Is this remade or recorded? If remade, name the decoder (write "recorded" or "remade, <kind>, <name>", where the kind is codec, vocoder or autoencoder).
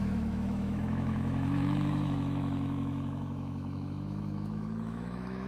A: remade, autoencoder, DAC-VAE